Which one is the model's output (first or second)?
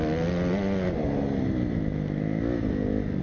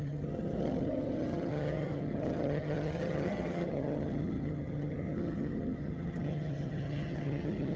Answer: second